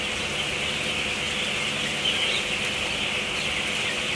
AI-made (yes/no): no